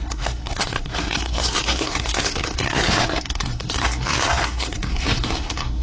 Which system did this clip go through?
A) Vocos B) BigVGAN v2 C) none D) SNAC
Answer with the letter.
D